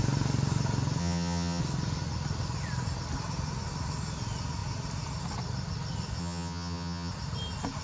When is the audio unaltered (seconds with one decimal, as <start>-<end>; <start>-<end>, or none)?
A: 0.0-1.0; 1.6-6.2; 7.1-7.8